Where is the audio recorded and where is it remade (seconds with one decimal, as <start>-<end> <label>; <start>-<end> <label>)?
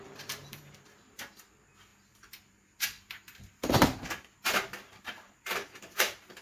0.0-6.4 remade